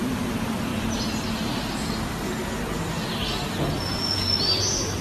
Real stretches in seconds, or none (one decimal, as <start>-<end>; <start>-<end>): 0.0-5.0